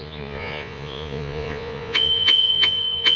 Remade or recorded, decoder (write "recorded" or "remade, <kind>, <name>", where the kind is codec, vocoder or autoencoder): remade, vocoder, Vocos